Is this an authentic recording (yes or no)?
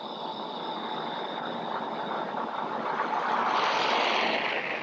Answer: yes